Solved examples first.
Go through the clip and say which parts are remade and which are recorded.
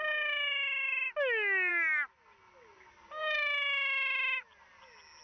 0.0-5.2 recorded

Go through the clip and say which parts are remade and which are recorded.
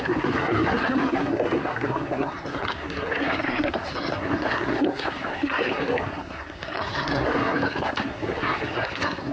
0.0-9.3 remade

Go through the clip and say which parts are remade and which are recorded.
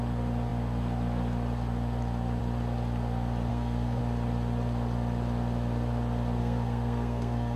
0.0-3.5 recorded; 3.5-4.0 remade; 4.0-6.4 recorded; 6.4-7.6 remade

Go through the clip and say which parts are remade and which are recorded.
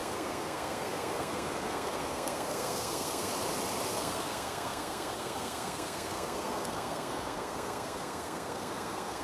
0.0-3.3 remade; 3.3-3.9 recorded; 3.9-9.2 remade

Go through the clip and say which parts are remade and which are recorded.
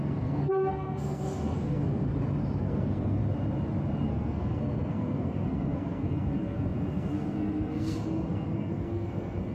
0.0-2.1 remade; 2.1-2.6 recorded; 2.6-3.2 remade; 3.2-4.1 recorded; 4.1-9.5 remade